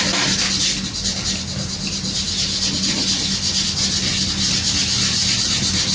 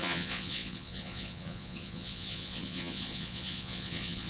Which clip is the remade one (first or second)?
second